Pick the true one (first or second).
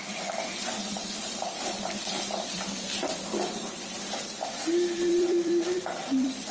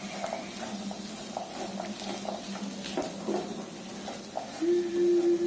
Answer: second